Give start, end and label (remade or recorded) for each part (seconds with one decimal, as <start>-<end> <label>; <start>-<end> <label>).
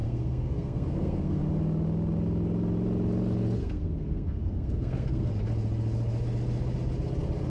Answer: 0.0-1.4 remade; 1.4-3.6 recorded; 3.6-5.3 remade; 5.3-7.5 recorded